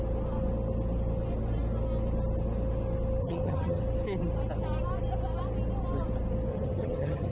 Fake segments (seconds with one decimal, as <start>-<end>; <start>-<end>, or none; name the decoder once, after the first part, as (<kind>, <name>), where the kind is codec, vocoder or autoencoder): 3.2-3.8 (vocoder, HiFi-GAN); 6.5-7.3